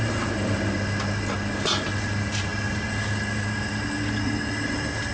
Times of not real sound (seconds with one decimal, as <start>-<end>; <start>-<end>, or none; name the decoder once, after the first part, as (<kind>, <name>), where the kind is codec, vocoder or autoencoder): none